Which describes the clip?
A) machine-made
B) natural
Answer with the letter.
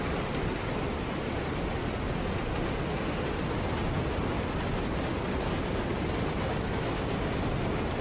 B